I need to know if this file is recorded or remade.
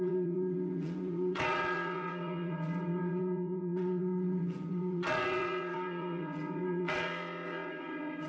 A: remade